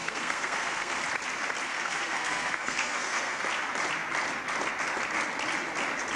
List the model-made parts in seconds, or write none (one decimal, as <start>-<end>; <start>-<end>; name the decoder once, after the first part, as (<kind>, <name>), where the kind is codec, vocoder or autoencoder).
0.0-1.0 (codec, SNAC); 1.7-3.4

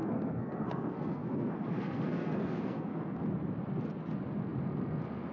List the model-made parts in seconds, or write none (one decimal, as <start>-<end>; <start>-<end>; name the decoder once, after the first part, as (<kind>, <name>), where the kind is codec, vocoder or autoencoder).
0.0-3.2 (codec, SNAC)

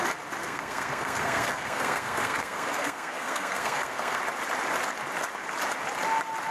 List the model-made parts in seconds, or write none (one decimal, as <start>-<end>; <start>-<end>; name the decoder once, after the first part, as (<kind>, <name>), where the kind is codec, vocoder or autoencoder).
0.4-4.2 (codec, SNAC)

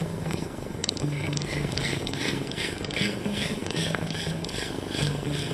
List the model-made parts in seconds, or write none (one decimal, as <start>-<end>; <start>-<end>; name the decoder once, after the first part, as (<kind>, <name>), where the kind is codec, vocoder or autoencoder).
0.0-5.5 (codec, SNAC)

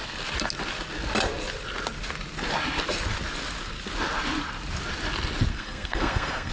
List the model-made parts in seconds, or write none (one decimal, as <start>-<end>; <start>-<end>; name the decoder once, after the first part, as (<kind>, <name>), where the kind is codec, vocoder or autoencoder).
5.5-6.5 (codec, SNAC)

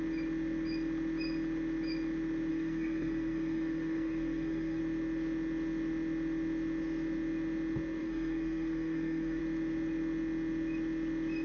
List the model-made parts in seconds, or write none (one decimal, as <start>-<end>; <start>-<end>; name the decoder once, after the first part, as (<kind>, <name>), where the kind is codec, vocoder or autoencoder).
2.5-4.8 (codec, SNAC); 8.0-9.4

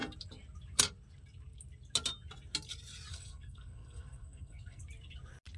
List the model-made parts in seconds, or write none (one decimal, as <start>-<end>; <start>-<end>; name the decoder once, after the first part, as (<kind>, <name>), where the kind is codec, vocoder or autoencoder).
3.1-4.8 (codec, SNAC)